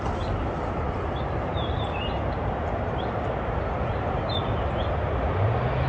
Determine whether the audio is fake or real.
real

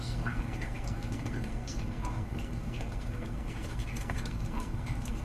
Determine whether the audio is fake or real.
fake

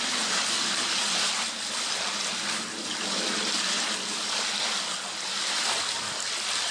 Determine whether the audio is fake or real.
real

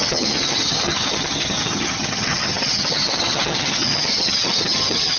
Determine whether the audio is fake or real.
fake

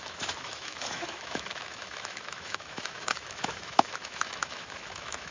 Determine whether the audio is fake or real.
fake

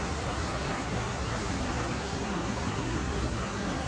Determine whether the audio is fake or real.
fake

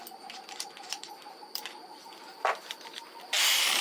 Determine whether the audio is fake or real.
fake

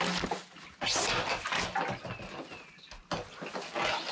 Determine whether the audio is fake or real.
real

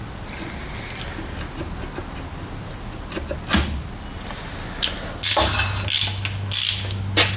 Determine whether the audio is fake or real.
real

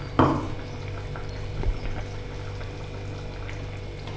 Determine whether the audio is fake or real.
real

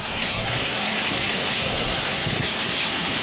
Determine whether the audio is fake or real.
fake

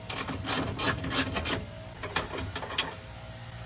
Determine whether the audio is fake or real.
real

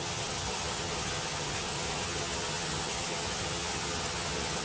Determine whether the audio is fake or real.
fake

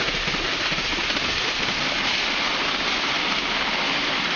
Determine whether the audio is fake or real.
real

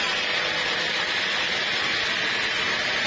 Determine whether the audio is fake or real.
real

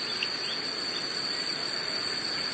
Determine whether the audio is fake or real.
real